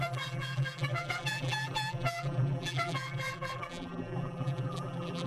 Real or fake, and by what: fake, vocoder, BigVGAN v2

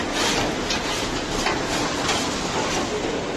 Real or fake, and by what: real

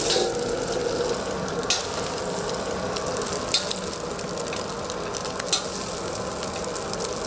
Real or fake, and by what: real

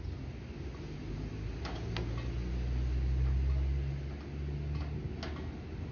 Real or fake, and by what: real